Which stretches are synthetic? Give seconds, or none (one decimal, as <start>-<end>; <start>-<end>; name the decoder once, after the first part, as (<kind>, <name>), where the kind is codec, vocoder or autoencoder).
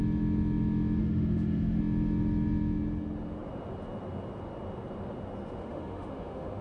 1.0-1.8 (autoencoder, DAC-VAE); 5.6-6.6